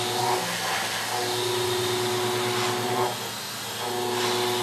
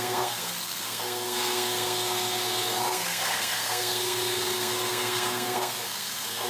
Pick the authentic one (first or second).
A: first